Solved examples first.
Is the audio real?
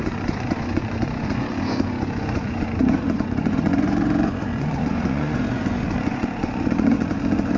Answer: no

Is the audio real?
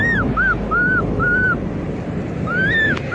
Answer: yes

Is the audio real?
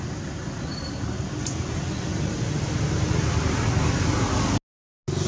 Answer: yes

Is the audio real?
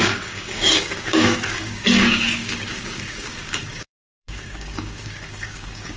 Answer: no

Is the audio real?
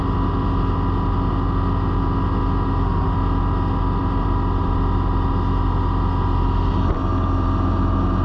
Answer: yes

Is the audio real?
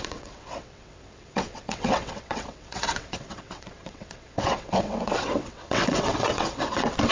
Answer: no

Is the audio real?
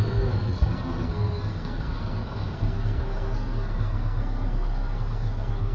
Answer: no